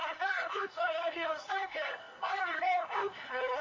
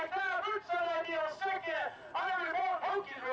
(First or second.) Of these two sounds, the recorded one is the second